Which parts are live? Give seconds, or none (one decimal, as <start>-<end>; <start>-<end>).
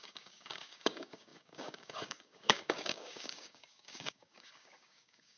none